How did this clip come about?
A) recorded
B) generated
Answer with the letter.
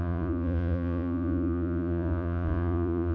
B